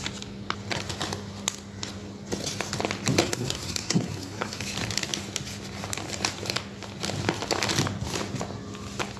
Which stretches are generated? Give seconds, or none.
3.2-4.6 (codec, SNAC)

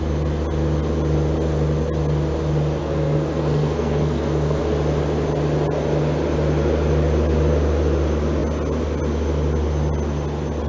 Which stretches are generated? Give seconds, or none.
2.8-4.6 (codec, SNAC)